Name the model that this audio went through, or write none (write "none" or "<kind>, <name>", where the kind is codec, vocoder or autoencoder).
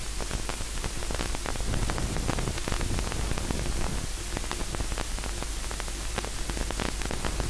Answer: none